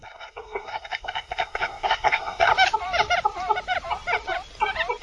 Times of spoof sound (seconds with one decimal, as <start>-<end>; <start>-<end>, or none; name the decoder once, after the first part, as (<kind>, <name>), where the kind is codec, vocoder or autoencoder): 0.0-2.5 (codec, SNAC)